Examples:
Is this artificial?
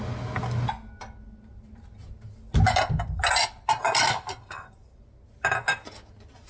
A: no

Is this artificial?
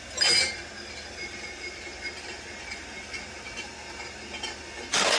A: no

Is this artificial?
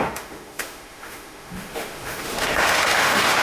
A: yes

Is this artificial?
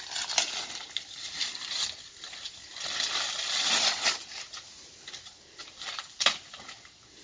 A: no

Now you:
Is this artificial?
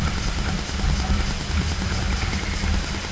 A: no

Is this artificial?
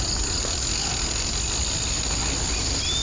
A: no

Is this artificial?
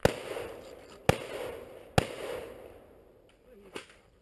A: no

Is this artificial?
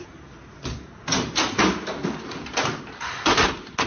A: no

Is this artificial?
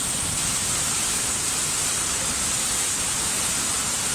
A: no